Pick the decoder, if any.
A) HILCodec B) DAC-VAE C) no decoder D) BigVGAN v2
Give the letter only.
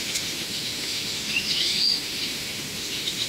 B